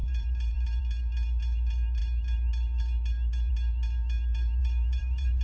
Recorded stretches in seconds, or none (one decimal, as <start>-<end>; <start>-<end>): 0.8-4.6